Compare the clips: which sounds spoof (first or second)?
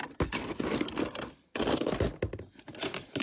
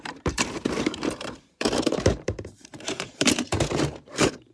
second